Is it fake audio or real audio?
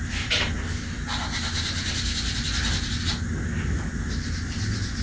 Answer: real